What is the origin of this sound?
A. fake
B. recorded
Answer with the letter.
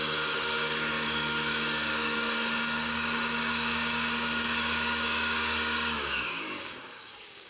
A